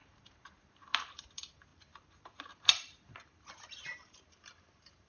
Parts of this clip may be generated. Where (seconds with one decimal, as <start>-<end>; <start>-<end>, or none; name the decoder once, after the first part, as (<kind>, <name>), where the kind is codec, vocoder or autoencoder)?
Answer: 0.0-5.1 (vocoder, BigVGAN v2)